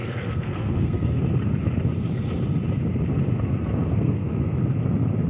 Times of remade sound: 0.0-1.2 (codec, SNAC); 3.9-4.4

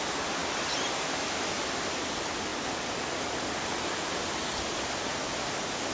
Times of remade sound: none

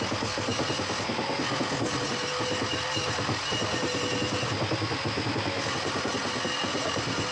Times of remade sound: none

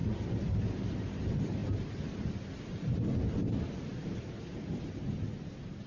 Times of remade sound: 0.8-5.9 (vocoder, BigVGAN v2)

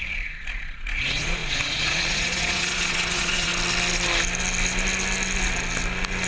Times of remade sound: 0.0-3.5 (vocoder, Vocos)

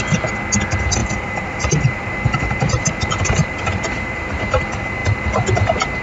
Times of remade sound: 1.0-4.6 (vocoder, BigVGAN v2)

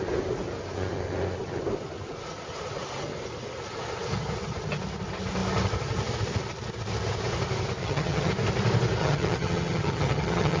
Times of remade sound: 7.8-8.3 (vocoder, HiFi-GAN); 9.0-10.6